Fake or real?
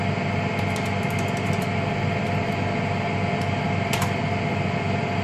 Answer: real